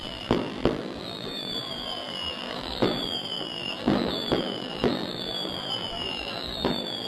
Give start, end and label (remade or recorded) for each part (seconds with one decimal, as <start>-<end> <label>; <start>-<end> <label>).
0.0-7.1 remade